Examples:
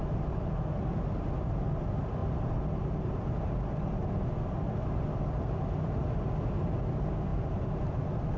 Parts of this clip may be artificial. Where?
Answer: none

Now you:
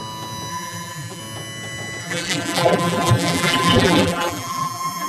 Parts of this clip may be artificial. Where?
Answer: 0.5-1.2 (vocoder, BigVGAN v2); 2.0-5.1

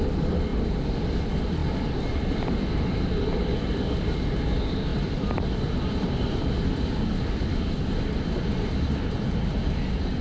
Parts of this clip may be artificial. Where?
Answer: 0.0-10.2 (vocoder, BigVGAN v2)

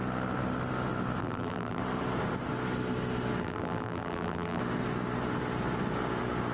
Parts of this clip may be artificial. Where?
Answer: 1.2-1.8 (vocoder, BigVGAN v2); 3.4-4.6

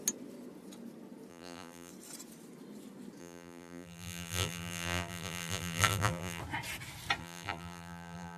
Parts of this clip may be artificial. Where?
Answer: 1.3-1.9 (vocoder, BigVGAN v2); 3.2-6.4; 7.2-8.4

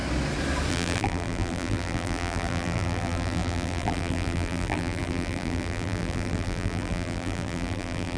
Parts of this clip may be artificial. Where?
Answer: 0.7-8.2 (vocoder, BigVGAN v2)

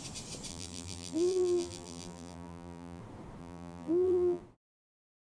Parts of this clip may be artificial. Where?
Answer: 0.5-3.0 (vocoder, BigVGAN v2); 3.4-4.4